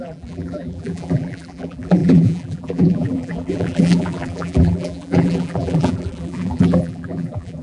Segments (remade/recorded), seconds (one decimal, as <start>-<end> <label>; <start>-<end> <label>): 0.0-7.6 remade